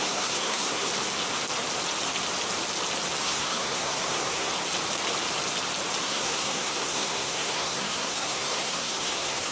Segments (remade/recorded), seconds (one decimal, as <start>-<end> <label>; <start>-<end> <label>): 0.0-0.9 remade; 0.9-3.2 recorded; 3.2-4.5 remade; 4.5-6.0 recorded; 6.0-9.5 remade